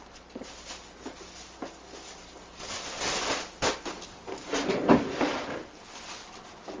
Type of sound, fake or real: real